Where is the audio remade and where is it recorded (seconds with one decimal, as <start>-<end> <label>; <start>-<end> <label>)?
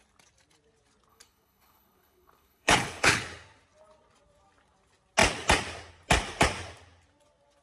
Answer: 0.0-1.1 recorded; 1.1-3.2 remade; 3.2-7.6 recorded